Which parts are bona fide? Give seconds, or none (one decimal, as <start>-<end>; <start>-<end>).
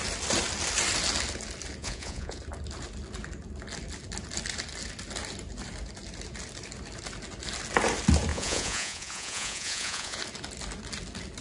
0.0-1.8; 2.4-8.3; 10.2-11.4